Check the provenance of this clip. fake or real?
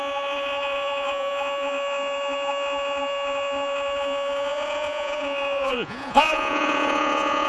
fake